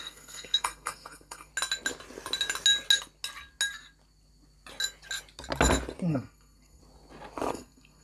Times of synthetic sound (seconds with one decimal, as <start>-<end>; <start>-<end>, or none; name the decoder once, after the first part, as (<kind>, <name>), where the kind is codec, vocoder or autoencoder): 0.0-1.5 (codec, SNAC); 6.1-6.8; 7.5-8.0